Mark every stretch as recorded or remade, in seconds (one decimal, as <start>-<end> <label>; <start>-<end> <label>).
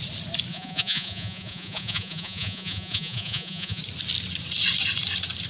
0.0-0.5 recorded; 0.5-3.8 remade; 3.8-5.5 recorded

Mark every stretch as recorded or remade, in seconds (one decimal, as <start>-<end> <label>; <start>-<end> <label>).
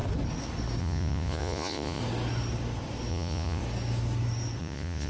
0.0-0.8 recorded; 0.8-2.0 remade; 2.0-3.1 recorded; 3.1-3.6 remade; 3.6-4.6 recorded; 4.6-5.1 remade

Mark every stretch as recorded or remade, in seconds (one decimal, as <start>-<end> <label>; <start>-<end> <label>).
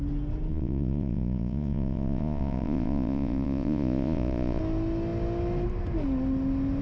0.0-0.5 recorded; 0.5-4.6 remade; 4.6-6.8 recorded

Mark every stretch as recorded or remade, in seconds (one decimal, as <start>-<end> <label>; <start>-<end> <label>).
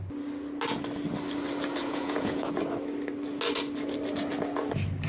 0.0-1.8 recorded; 1.8-2.5 remade; 2.5-5.1 recorded